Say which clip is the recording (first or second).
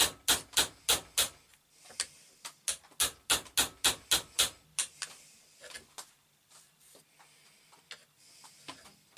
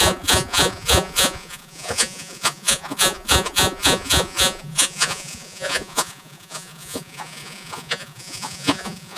first